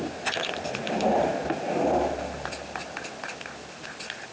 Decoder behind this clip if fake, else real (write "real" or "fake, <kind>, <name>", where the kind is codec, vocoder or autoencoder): real